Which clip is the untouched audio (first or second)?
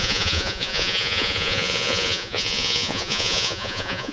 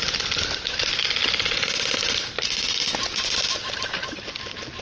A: second